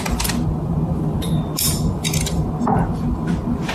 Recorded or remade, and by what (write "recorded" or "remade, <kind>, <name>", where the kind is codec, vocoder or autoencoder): recorded